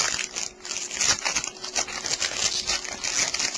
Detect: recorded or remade recorded